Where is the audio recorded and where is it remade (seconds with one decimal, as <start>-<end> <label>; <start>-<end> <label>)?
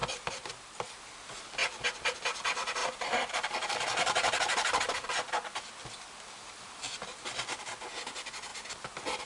0.0-2.8 recorded; 2.8-5.2 remade; 5.2-9.3 recorded